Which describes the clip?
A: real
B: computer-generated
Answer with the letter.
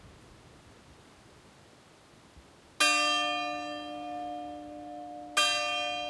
A